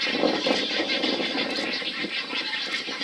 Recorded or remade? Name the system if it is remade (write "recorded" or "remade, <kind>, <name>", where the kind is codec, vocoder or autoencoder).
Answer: recorded